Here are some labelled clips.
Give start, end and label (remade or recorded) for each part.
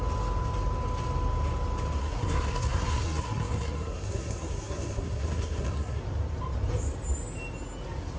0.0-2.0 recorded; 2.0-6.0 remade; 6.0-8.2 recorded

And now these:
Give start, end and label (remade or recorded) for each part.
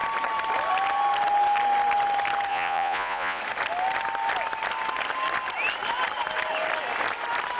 0.0-2.5 recorded; 2.5-3.4 remade; 3.4-7.6 recorded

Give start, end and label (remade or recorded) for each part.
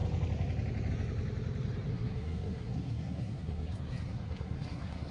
0.0-1.9 recorded; 1.9-5.1 remade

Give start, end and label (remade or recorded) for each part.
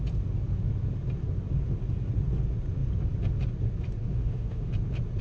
0.0-4.0 recorded; 4.0-4.7 remade; 4.7-5.2 recorded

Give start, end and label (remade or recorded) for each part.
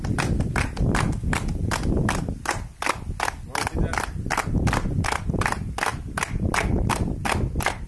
0.0-7.9 recorded